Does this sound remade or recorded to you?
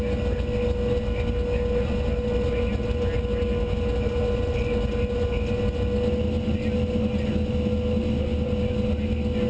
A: recorded